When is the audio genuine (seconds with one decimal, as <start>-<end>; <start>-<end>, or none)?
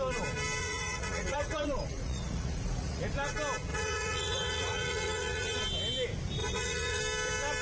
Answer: 0.0-0.6; 3.0-3.7; 5.6-6.4; 7.0-7.6